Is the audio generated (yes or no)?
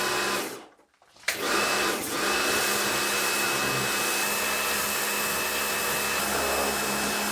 no